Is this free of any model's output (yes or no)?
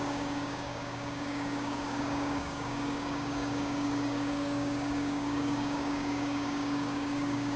no